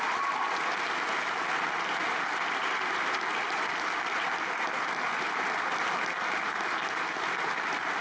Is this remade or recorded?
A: recorded